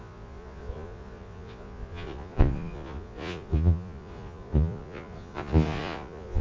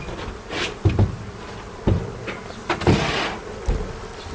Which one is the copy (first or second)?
first